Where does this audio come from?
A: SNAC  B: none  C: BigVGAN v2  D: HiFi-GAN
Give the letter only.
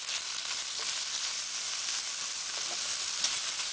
B